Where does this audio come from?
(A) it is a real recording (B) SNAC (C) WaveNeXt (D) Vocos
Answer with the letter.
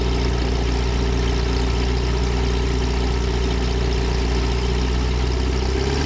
A